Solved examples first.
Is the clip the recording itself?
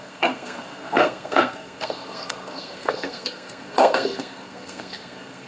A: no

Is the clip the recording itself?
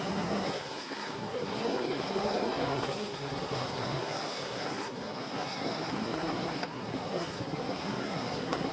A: no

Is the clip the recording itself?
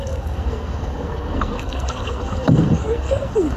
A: no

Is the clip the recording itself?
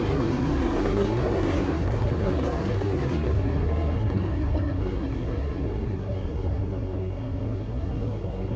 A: no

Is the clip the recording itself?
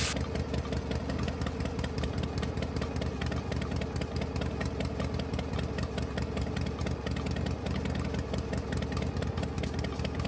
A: yes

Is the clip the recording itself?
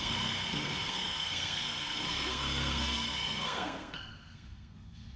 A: no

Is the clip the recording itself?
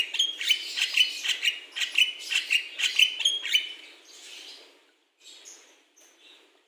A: yes